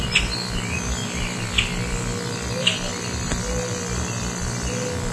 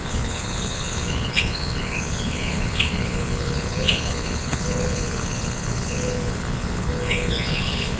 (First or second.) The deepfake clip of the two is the second